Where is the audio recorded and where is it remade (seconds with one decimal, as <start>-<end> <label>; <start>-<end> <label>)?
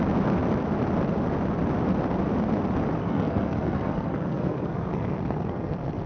0.0-3.0 recorded; 3.0-6.1 remade